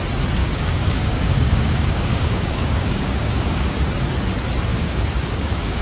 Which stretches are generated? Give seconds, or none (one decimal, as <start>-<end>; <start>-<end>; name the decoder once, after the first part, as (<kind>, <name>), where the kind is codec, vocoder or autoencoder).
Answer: 0.4-3.8 (codec, DAC); 4.7-5.8